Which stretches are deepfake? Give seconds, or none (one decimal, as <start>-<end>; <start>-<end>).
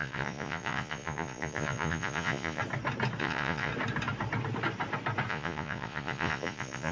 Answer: 0.0-2.6; 3.2-3.7; 5.3-6.9